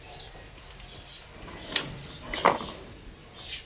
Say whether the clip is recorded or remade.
recorded